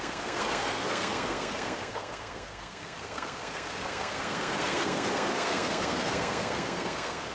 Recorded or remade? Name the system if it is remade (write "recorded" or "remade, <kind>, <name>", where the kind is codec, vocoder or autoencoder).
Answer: remade, codec, SNAC